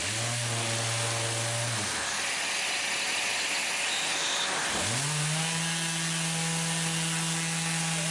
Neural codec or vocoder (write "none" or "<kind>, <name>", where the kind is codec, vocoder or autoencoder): none